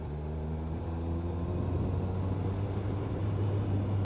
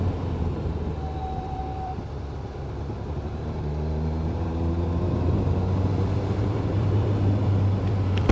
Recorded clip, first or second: first